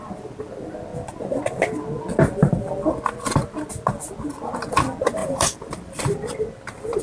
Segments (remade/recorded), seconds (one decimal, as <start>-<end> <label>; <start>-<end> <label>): 0.0-5.2 recorded; 5.2-6.0 remade; 6.0-7.0 recorded